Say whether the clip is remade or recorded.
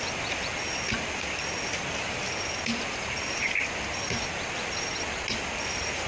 recorded